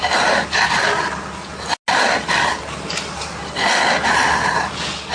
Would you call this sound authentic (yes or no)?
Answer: yes